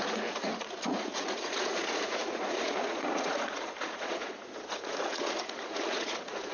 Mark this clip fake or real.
fake